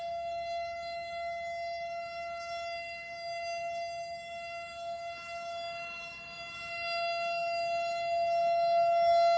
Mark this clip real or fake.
fake